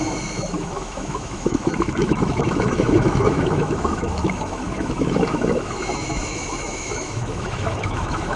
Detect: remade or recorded remade